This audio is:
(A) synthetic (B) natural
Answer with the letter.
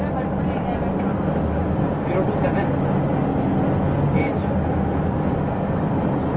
B